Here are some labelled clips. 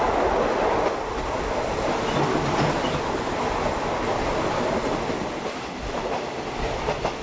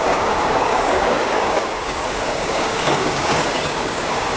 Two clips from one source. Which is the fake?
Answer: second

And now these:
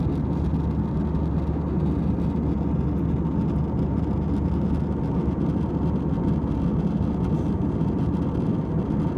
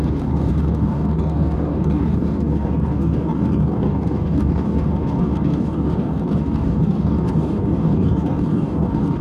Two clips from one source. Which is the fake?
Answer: second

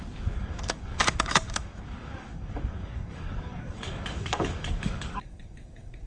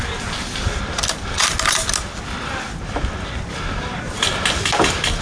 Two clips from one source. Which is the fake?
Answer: first